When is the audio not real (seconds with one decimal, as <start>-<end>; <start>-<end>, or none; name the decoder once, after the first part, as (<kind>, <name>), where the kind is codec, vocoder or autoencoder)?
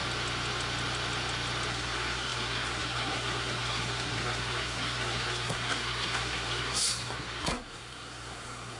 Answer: 1.7-8.8 (codec, SNAC)